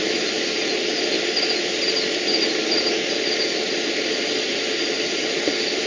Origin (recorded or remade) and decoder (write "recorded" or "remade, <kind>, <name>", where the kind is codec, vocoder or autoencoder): recorded